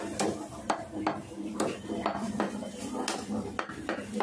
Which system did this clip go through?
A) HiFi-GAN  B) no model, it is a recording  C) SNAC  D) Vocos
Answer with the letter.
B